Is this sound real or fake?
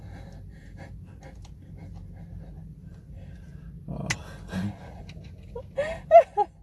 real